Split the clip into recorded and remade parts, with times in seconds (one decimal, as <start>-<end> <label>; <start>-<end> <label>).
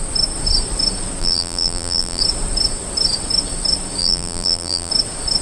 0.0-1.2 recorded; 1.2-2.2 remade; 2.2-4.0 recorded; 4.0-4.9 remade; 4.9-5.4 recorded